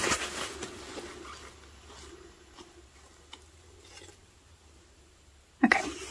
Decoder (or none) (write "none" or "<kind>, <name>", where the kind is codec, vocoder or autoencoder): none